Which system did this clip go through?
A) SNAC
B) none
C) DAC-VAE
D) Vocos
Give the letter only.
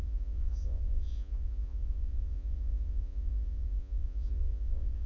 D